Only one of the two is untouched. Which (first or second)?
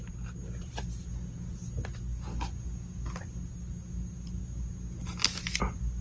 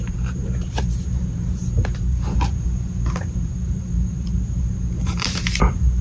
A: first